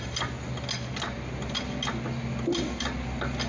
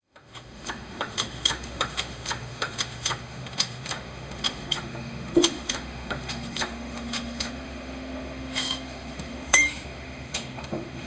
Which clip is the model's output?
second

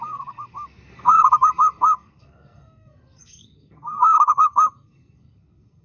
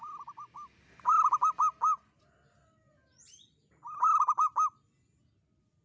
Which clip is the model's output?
first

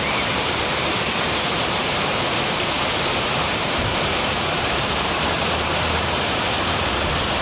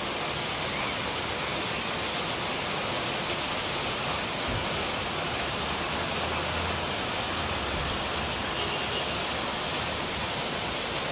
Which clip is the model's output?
first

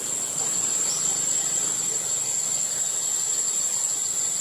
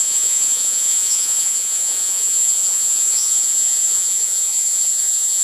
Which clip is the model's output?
second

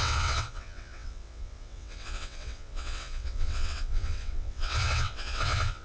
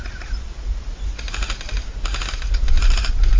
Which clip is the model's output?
first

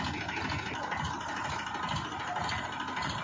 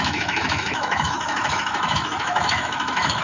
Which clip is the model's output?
second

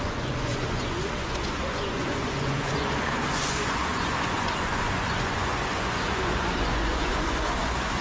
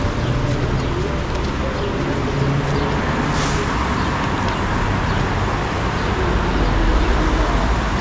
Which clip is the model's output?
first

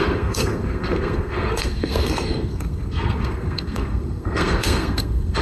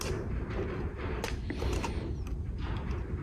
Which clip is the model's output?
first